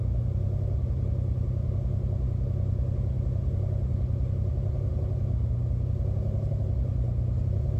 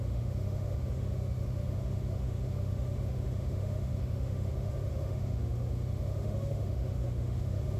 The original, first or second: first